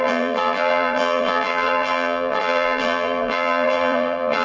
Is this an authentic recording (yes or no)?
no